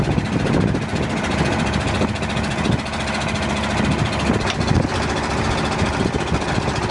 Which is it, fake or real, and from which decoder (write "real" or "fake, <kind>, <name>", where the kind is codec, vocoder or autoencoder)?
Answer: real